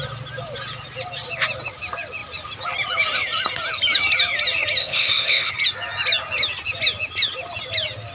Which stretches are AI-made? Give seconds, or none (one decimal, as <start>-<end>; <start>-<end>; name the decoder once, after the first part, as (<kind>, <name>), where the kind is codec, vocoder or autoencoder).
4.8-5.5 (codec, ZipCodec)